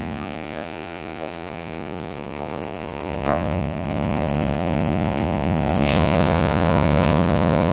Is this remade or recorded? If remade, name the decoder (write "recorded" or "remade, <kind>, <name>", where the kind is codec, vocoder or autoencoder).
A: remade, vocoder, Vocos